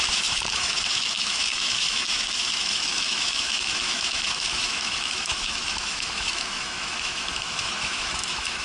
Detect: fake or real fake